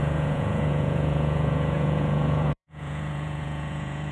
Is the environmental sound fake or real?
fake